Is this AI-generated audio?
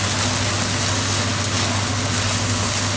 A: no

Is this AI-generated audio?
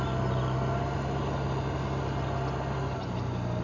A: no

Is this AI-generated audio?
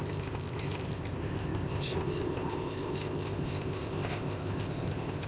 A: yes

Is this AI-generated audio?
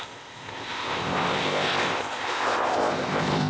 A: yes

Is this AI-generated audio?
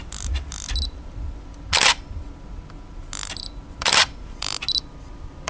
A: no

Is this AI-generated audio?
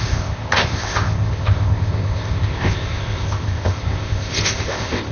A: yes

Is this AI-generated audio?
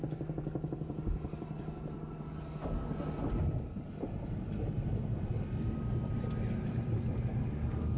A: no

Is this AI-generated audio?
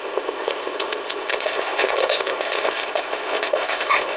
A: yes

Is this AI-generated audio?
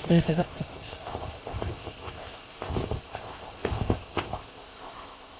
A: yes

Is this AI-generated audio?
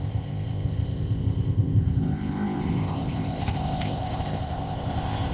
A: yes